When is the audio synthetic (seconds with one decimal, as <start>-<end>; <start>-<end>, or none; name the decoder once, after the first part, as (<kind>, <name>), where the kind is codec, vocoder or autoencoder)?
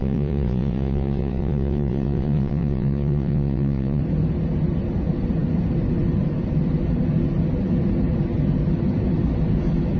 0.0-4.0 (vocoder, WaveNeXt)